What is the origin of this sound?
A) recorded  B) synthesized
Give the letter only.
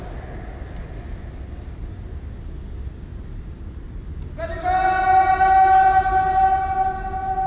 A